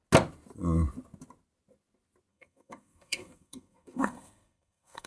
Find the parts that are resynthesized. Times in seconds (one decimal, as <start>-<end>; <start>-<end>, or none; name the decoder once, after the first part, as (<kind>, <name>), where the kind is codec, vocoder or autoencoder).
2.3-5.1 (codec, SNAC)